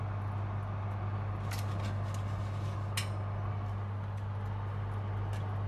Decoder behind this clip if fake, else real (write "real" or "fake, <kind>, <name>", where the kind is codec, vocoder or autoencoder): real